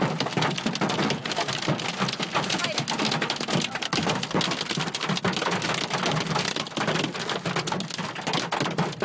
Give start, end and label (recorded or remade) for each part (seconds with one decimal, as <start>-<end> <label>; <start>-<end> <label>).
0.0-9.0 recorded